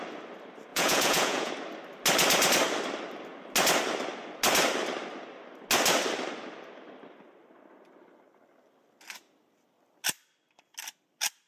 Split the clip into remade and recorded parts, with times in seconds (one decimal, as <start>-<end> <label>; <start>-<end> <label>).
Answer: 0.0-0.7 recorded; 0.7-1.5 remade; 1.5-11.5 recorded